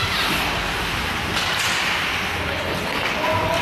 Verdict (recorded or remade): recorded